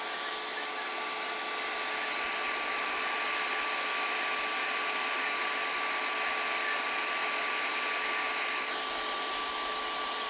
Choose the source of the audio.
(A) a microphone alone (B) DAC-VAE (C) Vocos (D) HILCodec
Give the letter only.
A